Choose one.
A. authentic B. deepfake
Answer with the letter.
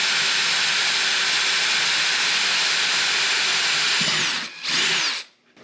A